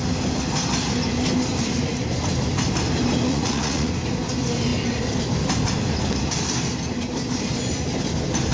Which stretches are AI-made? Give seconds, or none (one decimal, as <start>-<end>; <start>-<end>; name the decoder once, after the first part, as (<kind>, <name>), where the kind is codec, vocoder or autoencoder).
3.3-3.9 (vocoder, Vocos)